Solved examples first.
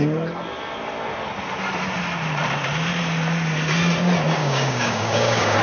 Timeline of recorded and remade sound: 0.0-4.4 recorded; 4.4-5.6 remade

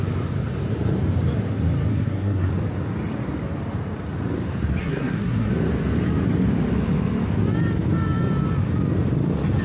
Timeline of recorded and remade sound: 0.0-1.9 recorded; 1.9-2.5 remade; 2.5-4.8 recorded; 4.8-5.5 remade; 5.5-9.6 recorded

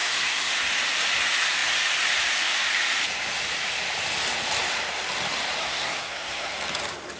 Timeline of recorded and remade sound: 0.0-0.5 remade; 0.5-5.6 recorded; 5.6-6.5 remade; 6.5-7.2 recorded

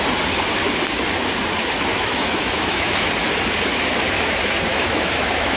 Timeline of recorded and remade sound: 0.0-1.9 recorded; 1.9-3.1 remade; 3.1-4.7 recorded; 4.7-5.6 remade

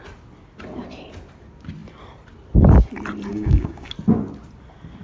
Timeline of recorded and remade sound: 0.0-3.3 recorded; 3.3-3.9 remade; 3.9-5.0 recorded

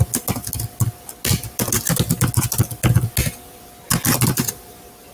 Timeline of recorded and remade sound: 0.0-5.1 recorded

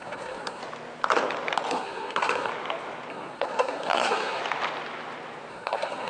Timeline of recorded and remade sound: 0.0-0.6 remade; 0.6-1.7 recorded; 1.7-2.5 remade; 2.5-3.1 recorded; 3.1-4.4 remade; 4.4-5.5 recorded; 5.5-6.1 remade

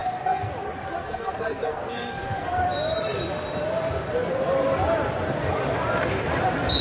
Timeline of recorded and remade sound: 0.0-0.5 remade; 0.5-1.0 recorded; 1.0-2.6 remade; 2.6-6.8 recorded